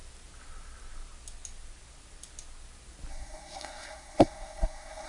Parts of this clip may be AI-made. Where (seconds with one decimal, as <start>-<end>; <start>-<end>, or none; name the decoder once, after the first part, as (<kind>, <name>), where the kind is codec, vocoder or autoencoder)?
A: 3.1-5.1 (codec, SNAC)